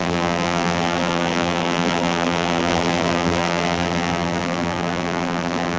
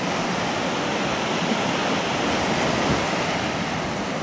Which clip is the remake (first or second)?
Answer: first